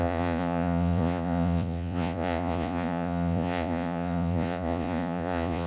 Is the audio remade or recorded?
remade